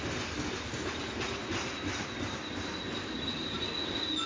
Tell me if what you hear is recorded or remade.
recorded